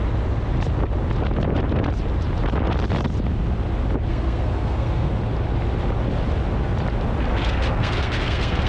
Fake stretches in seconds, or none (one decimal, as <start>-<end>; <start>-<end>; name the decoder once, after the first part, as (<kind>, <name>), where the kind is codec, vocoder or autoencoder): 4.1-5.1 (codec, SNAC); 7.3-8.7